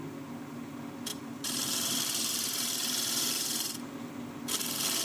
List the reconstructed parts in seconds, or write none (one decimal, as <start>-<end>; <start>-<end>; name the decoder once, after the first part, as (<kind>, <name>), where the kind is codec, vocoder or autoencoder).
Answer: 1.1-4.1 (vocoder, BigVGAN v2)

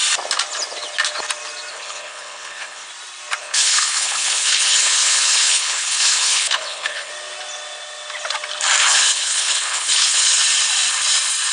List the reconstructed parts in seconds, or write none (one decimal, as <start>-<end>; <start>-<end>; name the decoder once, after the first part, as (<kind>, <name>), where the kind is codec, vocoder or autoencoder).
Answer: 1.7-2.9 (codec, HILCodec); 3.4-7.1; 8.8-10.4

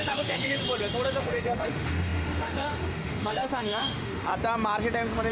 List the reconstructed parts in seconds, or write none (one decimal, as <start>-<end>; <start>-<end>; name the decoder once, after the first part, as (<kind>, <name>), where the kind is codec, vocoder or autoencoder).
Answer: 0.0-0.6 (autoencoder, DAC-VAE); 1.2-4.3